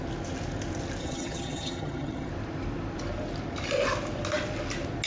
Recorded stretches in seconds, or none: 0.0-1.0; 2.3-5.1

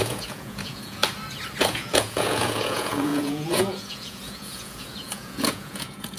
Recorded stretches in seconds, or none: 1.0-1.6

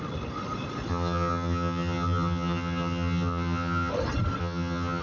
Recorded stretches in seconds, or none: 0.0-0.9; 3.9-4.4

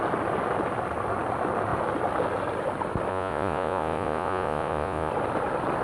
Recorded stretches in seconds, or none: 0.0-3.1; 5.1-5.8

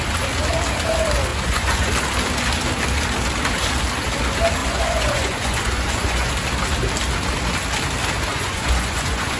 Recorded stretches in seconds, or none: 0.0-1.3; 1.9-4.6; 6.3-8.3

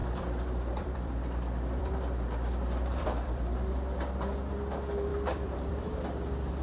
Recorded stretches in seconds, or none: 4.0-5.1; 6.0-6.6